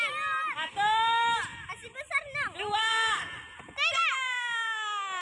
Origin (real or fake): real